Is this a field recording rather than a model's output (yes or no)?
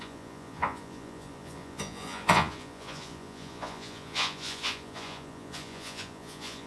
no